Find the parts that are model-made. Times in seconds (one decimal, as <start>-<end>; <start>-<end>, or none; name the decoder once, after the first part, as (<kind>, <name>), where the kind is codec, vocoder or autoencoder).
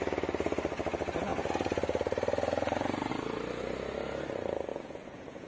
4.7-5.5 (vocoder, Vocos)